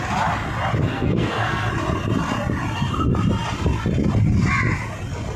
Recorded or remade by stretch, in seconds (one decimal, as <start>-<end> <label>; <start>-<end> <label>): 0.0-0.8 recorded; 0.8-1.7 remade; 1.7-5.4 recorded